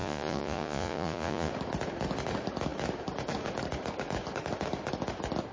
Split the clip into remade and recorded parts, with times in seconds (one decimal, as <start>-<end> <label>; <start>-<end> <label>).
0.0-1.5 remade; 1.5-5.5 recorded